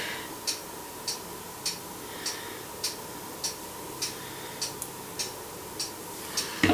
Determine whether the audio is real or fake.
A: real